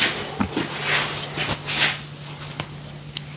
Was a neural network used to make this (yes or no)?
no